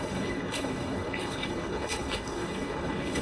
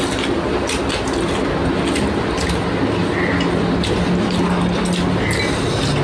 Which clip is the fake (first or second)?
first